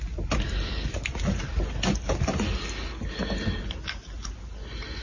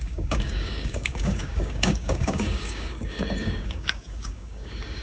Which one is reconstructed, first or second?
second